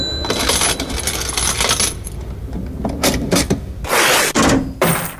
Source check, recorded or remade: recorded